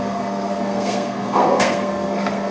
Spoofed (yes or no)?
yes